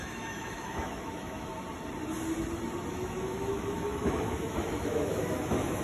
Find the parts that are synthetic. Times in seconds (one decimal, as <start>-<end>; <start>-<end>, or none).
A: 0.0-1.5; 2.9-5.8